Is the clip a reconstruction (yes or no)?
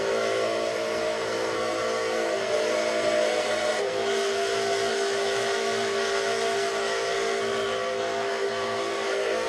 yes